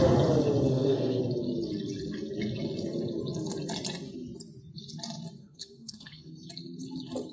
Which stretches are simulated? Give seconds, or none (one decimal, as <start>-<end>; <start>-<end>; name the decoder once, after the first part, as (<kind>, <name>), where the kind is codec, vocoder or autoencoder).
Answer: 0.7-1.2 (codec, SNAC); 5.4-6.5